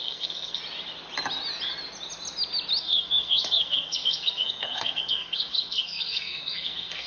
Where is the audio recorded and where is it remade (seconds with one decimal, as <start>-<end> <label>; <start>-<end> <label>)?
0.0-0.6 remade; 0.6-2.8 recorded; 2.8-7.1 remade